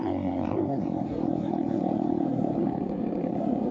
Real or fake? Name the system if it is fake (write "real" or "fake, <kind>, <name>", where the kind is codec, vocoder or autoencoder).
fake, codec, SNAC